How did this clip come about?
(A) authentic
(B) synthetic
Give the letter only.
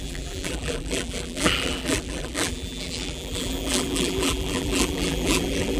B